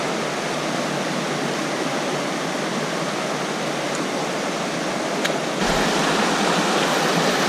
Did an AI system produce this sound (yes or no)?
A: no